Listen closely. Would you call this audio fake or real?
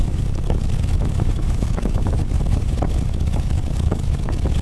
fake